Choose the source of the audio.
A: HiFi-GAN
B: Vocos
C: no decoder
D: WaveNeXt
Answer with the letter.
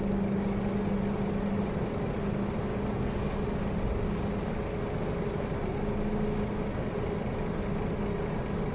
C